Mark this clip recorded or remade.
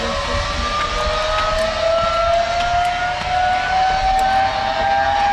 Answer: recorded